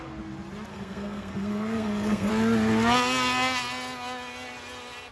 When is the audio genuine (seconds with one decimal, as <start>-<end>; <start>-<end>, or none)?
0.0-0.7; 2.3-5.1